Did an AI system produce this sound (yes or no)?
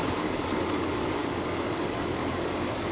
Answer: yes